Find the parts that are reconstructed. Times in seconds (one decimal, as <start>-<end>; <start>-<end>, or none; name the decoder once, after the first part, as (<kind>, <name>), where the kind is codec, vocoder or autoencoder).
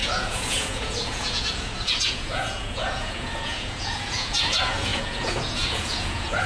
0.0-6.5 (vocoder, Vocos)